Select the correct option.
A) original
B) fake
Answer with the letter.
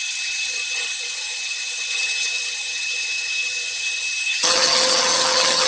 B